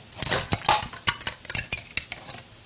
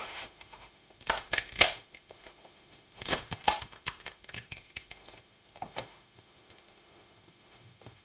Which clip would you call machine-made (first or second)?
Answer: second